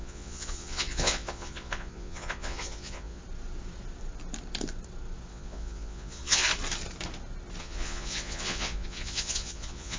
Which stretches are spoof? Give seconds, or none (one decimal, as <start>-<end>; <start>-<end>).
0.0-3.2; 5.3-6.5; 7.6-10.0